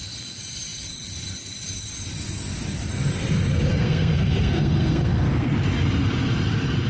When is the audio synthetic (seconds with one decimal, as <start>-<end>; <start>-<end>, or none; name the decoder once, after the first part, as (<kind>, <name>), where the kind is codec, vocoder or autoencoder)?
3.7-5.5 (codec, SNAC)